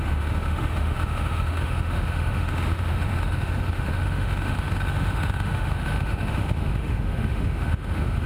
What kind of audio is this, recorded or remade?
remade